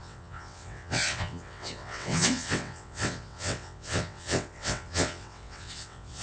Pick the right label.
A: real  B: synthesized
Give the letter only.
B